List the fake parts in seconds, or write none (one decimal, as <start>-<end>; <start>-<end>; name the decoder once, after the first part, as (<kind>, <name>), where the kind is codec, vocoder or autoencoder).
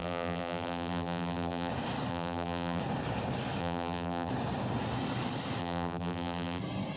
0.0-1.7 (vocoder, BigVGAN v2); 2.1-2.8; 3.6-4.3; 5.6-6.6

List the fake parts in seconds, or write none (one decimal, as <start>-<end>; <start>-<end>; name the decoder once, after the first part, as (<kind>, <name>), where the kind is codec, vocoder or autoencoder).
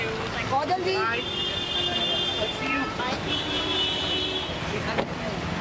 2.3-4.9 (vocoder, BigVGAN v2)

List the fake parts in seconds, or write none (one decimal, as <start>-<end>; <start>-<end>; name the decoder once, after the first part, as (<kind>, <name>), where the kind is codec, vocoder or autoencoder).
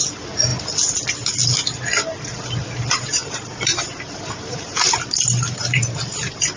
2.3-6.6 (vocoder, BigVGAN v2)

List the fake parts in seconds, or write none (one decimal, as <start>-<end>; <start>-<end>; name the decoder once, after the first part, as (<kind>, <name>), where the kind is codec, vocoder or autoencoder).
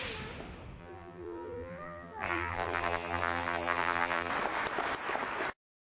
0.8-4.3 (vocoder, BigVGAN v2)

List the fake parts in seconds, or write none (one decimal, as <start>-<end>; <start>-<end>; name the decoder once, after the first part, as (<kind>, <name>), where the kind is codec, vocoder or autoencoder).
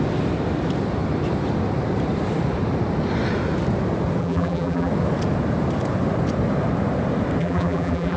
4.2-4.9 (vocoder, BigVGAN v2); 7.4-8.2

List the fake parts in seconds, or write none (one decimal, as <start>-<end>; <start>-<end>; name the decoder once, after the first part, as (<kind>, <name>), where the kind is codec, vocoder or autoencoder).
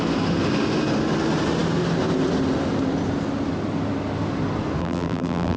4.8-5.6 (vocoder, BigVGAN v2)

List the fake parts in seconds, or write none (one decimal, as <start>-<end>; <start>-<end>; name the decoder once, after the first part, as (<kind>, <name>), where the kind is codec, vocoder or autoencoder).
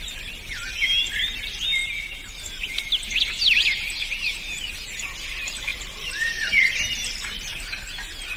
1.8-2.4 (vocoder, BigVGAN v2); 5.7-6.5; 7.5-8.4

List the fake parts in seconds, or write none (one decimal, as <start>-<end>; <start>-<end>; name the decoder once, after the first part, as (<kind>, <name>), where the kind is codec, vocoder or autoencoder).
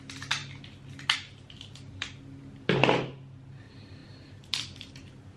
0.0-0.4 (vocoder, BigVGAN v2); 3.6-5.4